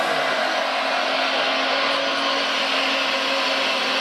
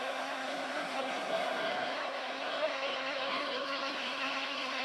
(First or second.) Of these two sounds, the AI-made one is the second